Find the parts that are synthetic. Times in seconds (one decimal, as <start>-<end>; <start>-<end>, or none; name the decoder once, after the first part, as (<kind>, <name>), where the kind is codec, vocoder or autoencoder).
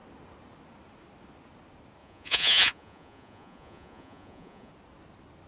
2.0-4.7 (vocoder, Vocos)